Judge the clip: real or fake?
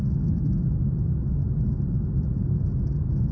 real